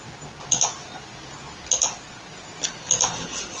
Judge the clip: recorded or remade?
recorded